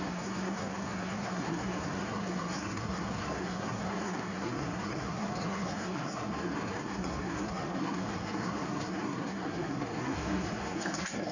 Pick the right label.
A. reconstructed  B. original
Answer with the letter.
A